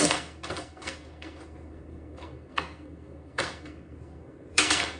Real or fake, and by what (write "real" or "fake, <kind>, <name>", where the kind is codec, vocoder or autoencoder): fake, codec, SNAC